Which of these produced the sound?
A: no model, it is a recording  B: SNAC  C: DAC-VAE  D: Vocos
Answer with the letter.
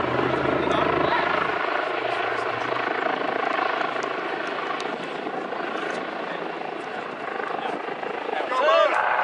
A